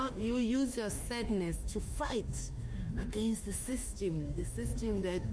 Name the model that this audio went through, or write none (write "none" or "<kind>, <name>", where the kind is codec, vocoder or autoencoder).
autoencoder, DAC-VAE